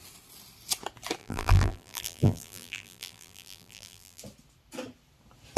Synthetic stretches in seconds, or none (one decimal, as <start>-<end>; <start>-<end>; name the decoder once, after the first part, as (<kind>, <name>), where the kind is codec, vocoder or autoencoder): 1.2-4.2 (vocoder, BigVGAN v2)